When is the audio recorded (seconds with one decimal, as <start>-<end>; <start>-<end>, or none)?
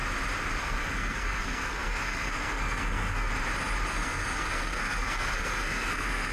0.0-0.6; 3.3-3.9